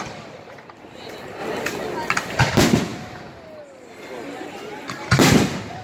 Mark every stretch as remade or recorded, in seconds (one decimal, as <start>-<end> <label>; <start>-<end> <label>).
0.0-5.8 recorded